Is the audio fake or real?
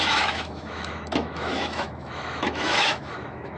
fake